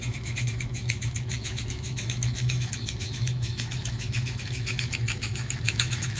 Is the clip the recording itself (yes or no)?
no